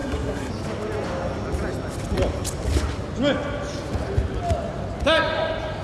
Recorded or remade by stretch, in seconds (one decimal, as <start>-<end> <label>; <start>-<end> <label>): 0.0-0.5 remade; 0.5-5.8 recorded